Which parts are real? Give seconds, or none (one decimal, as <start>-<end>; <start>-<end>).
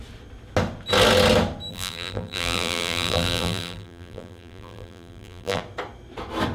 0.0-1.7; 5.6-6.5